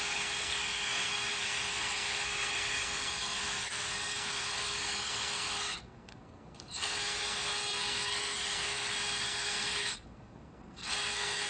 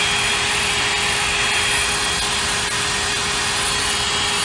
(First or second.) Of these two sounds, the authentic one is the second